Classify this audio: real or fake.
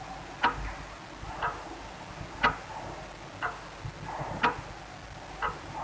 real